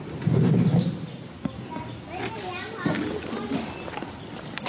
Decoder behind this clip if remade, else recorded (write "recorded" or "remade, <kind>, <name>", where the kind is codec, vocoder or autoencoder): recorded